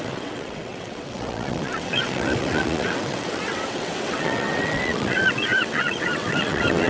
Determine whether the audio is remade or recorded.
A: remade